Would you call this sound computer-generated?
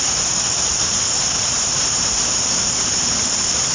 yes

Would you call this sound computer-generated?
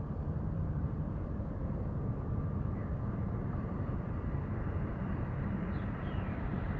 yes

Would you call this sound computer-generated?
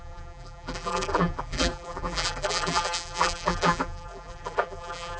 yes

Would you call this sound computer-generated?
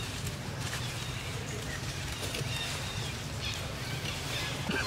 yes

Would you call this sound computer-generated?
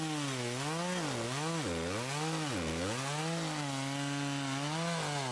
no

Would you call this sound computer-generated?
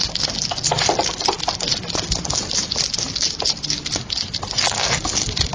no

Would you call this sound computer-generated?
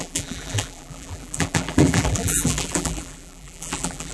yes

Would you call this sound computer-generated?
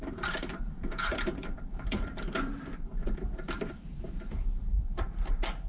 yes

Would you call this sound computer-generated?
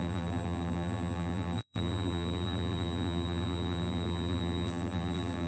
yes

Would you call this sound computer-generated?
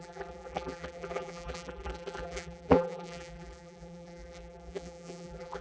yes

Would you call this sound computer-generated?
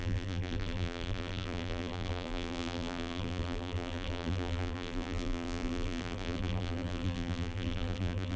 yes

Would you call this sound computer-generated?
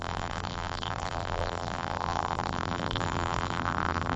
yes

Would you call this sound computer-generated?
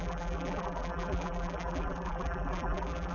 yes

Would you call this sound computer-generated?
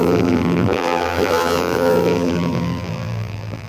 yes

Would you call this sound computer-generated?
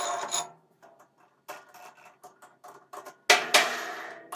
no